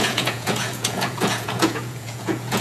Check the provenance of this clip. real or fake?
fake